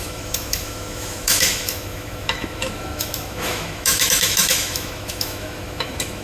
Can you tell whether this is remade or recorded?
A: remade